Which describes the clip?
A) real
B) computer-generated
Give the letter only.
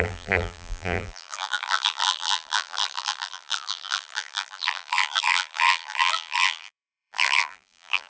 B